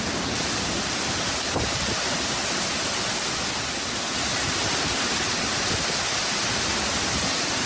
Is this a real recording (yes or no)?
yes